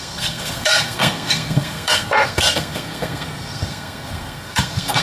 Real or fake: fake